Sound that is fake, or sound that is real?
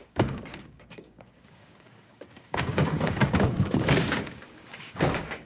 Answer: fake